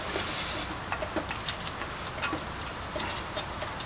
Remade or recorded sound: recorded